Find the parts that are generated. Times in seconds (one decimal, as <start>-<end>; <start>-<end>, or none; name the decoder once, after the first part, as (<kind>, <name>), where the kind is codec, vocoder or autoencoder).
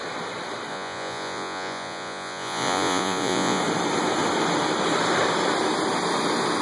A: 0.7-3.6 (vocoder, Vocos)